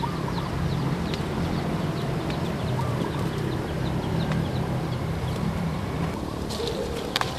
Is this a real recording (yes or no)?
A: no